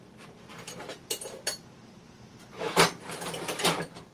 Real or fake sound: fake